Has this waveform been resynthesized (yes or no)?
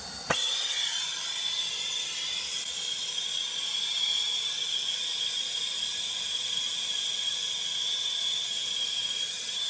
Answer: no